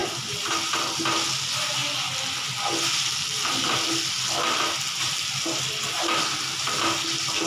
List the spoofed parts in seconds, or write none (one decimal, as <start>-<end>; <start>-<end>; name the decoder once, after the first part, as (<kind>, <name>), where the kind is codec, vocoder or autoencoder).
none